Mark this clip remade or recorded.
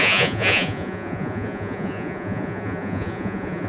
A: remade